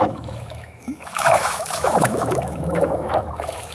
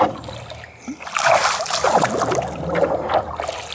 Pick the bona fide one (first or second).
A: second